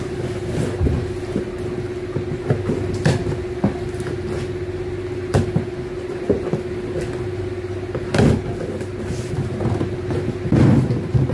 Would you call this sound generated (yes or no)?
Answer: no